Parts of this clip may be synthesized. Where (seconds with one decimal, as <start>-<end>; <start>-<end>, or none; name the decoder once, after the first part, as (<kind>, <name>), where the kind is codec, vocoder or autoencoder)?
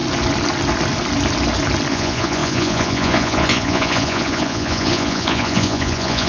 1.9-6.3 (vocoder, Vocos)